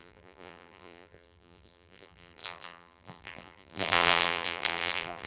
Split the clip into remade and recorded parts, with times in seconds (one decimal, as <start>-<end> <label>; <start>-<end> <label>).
0.0-5.3 remade